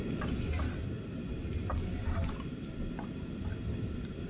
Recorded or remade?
recorded